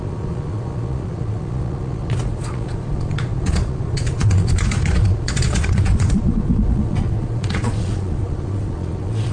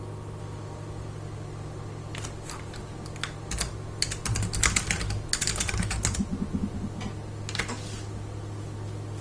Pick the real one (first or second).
second